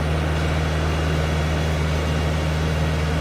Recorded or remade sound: recorded